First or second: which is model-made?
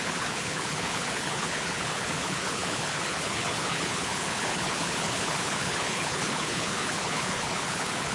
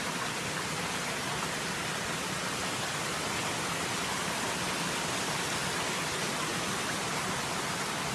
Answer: first